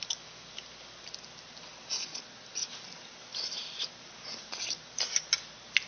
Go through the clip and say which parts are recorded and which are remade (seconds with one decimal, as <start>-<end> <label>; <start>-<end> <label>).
0.0-5.9 recorded